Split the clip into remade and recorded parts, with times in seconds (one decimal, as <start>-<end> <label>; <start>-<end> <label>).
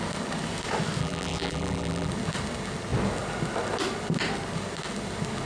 0.0-1.0 recorded; 1.0-2.1 remade; 2.1-5.5 recorded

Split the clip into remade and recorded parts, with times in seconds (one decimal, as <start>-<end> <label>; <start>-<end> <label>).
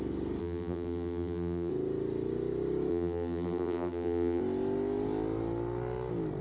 0.0-0.4 recorded; 0.4-1.7 remade; 1.7-2.9 recorded; 2.9-4.4 remade; 4.4-6.4 recorded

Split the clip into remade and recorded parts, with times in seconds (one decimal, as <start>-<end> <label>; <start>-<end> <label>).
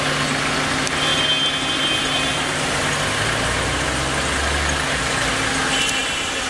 0.0-6.5 recorded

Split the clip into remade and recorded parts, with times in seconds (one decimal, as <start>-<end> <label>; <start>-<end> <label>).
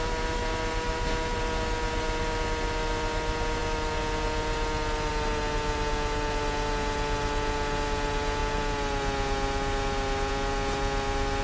0.0-11.4 recorded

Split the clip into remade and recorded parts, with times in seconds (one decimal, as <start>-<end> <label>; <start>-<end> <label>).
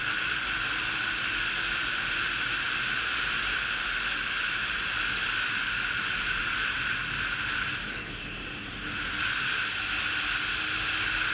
0.0-5.2 recorded; 5.2-6.4 remade; 6.4-11.3 recorded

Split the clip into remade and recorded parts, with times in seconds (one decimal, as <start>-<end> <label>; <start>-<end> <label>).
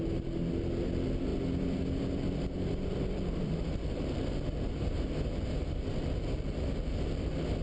0.0-1.3 recorded; 1.3-5.0 remade; 5.0-7.6 recorded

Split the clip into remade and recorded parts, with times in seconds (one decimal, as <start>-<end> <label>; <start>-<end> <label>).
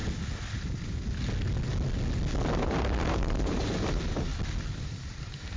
0.0-2.6 recorded; 2.6-4.3 remade; 4.3-4.9 recorded; 4.9-5.6 remade